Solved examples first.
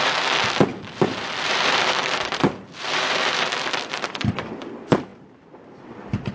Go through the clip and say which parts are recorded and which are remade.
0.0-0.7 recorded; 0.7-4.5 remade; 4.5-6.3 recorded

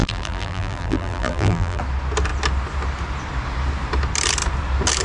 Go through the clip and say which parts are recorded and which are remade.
0.0-1.8 remade; 1.8-5.0 recorded

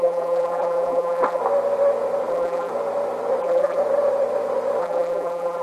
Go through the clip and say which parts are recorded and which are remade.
0.0-1.4 remade; 1.4-2.3 recorded; 2.3-2.7 remade; 2.7-3.4 recorded; 3.4-3.8 remade; 3.8-4.8 recorded; 4.8-5.6 remade

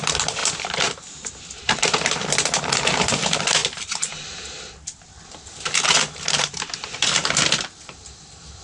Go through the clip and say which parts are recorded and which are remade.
0.0-3.6 remade; 3.6-6.2 recorded; 6.2-7.2 remade; 7.2-7.9 recorded; 7.9-8.6 remade

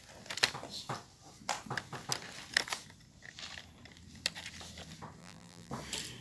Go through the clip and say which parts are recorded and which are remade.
0.0-5.2 recorded; 5.2-5.7 remade; 5.7-6.2 recorded

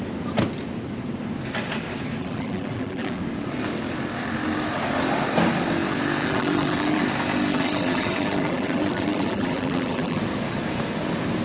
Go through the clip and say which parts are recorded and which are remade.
0.0-2.2 recorded; 2.2-3.2 remade; 3.2-6.2 recorded; 6.2-7.0 remade; 7.0-7.5 recorded; 7.5-10.2 remade; 10.2-11.4 recorded

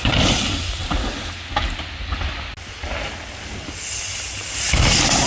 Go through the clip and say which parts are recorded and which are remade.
0.0-0.8 remade; 0.8-4.0 recorded; 4.0-5.3 remade